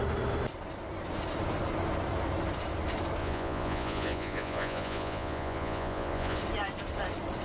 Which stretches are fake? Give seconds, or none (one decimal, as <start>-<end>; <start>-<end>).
3.2-6.4